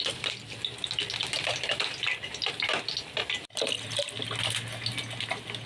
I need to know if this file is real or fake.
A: real